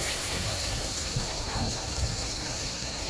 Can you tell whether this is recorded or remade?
remade